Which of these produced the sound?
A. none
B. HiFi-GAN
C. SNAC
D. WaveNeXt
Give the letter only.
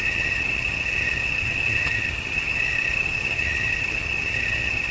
B